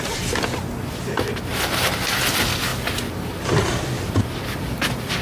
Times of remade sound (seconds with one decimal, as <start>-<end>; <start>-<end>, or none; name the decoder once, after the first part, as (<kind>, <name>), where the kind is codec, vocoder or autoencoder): none